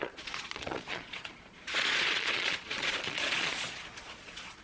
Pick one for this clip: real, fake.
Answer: fake